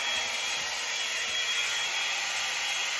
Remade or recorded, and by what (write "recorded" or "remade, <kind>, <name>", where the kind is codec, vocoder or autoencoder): recorded